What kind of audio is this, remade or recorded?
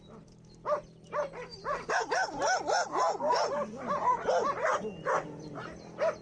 recorded